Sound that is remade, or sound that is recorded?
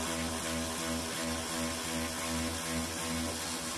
recorded